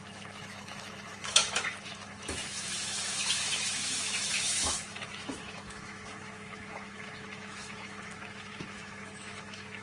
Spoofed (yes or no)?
yes